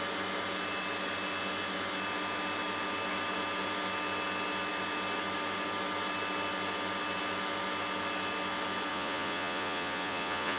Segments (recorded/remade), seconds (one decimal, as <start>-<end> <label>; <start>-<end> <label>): 0.0-8.9 recorded; 8.9-10.6 remade